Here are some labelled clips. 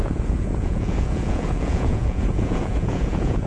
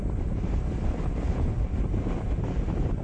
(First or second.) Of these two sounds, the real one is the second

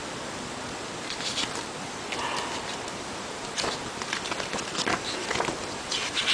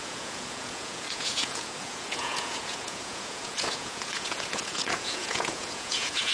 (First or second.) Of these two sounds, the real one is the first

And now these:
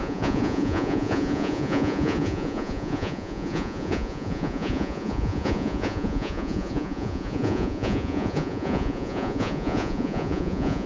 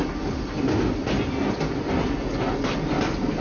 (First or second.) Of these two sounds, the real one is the second